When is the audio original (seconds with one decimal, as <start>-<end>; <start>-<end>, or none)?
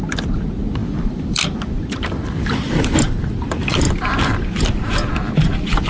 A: 0.0-0.8; 3.9-5.9